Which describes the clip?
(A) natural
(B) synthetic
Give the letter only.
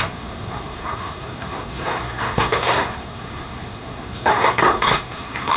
B